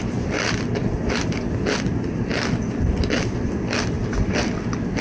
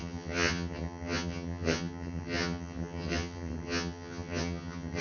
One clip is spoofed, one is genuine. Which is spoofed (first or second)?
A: second